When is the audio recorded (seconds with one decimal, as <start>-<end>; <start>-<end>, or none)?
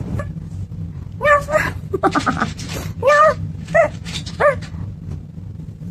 none